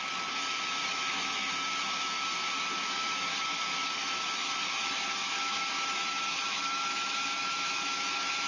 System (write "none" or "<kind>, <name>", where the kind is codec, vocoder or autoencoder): autoencoder, DAC-VAE